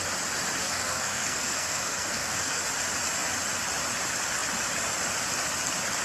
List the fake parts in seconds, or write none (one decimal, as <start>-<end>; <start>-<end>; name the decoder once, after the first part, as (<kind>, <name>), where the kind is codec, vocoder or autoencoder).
0.6-2.6 (codec, SNAC)